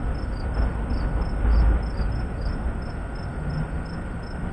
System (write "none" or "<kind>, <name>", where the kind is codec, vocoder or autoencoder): none